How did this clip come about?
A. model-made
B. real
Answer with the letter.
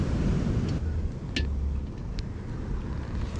B